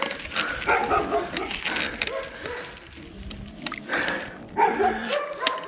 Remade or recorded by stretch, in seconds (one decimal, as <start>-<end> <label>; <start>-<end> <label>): 0.0-5.7 recorded